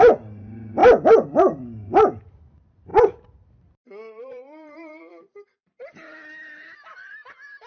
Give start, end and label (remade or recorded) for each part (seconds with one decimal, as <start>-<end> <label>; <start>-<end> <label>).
0.0-2.9 recorded; 2.9-5.1 remade; 5.1-7.7 recorded